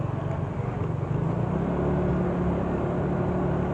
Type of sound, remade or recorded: recorded